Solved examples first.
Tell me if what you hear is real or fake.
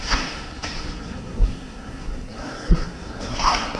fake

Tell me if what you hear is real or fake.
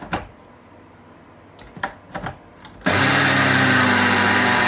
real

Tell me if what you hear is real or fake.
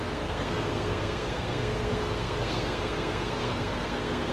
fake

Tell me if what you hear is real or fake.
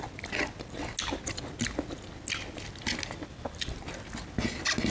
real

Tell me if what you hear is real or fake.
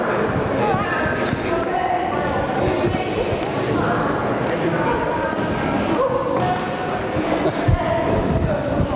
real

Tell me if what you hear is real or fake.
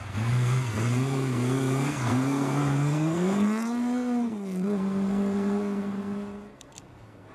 fake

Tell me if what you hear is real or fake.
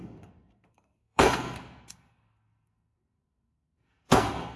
fake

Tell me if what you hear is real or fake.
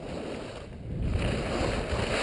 real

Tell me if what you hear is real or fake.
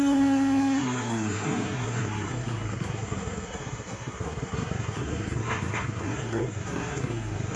fake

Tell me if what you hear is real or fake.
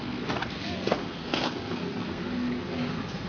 fake